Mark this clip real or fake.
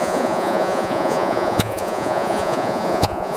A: fake